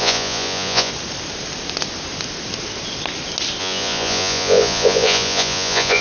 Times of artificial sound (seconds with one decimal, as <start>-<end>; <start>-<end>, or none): 0.0-0.9; 3.6-6.0

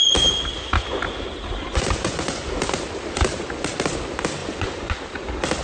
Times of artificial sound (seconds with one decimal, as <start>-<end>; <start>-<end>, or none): 1.6-2.5; 4.4-5.0

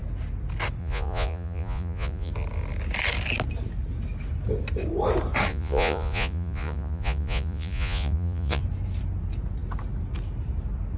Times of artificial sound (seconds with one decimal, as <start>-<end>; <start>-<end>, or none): 0.8-2.3; 5.5-8.6

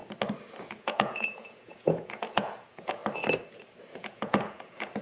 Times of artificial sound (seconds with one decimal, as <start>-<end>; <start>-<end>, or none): 0.6-3.0; 3.8-5.0

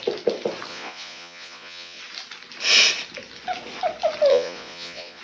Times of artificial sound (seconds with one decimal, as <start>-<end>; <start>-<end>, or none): 0.7-2.0; 4.3-5.2

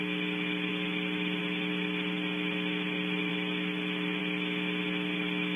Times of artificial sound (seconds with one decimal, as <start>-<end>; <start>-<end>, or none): none

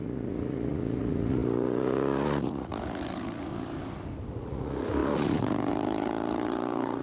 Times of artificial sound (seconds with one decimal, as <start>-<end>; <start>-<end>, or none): 0.0-3.5; 4.3-7.0

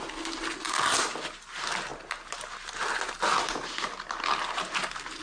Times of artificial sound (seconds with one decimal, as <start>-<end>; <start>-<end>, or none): none